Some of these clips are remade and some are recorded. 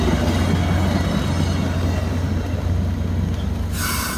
recorded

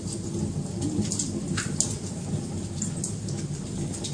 recorded